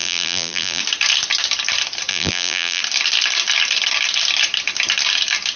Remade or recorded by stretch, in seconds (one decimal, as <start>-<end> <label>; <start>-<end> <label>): 0.0-0.8 remade; 0.8-2.1 recorded; 2.1-2.8 remade; 2.8-5.6 recorded